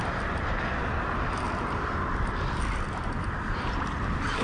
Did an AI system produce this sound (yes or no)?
no